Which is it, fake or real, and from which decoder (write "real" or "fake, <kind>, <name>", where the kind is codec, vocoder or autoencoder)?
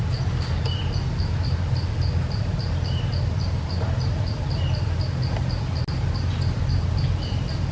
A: real